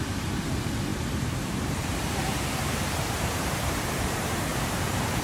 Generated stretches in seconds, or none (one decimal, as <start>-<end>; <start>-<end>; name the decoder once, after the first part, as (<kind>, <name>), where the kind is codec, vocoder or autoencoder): 0.0-4.5 (vocoder, BigVGAN v2)